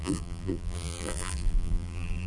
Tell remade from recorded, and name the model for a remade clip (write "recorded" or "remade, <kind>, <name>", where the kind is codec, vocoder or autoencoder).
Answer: remade, vocoder, BigVGAN v2